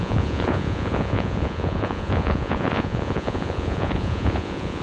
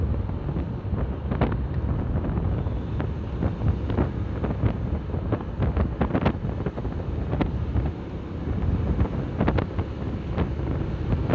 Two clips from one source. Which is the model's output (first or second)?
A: first